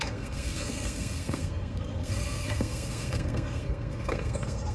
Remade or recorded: remade